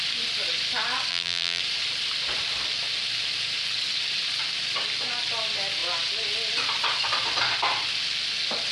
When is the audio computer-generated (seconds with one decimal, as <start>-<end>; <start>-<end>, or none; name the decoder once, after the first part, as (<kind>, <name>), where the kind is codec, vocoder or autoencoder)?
1.1-1.6 (vocoder, BigVGAN v2)